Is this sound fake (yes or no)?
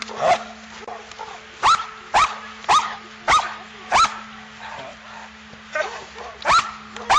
no